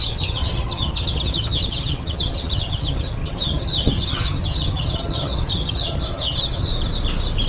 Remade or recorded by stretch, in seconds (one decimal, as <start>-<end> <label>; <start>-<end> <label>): 0.0-6.7 remade; 6.7-7.5 recorded